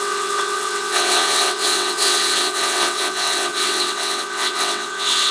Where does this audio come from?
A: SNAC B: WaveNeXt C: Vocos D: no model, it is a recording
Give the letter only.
B